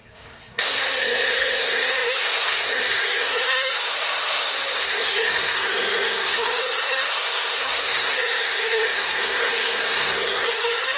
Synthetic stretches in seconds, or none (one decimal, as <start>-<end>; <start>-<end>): 0.0-11.0